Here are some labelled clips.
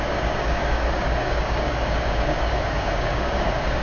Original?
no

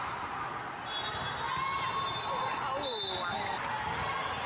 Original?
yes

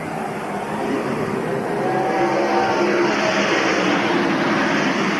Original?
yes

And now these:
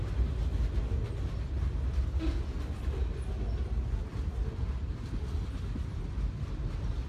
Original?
yes